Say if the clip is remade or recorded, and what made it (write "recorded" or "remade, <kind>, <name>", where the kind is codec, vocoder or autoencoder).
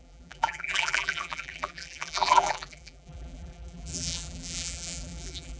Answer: remade, vocoder, BigVGAN v2